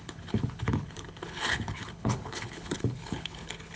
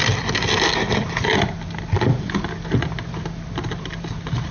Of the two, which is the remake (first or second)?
first